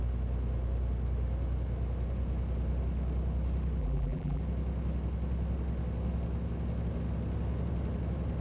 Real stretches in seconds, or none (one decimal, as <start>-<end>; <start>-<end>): 0.0-3.8; 4.4-8.4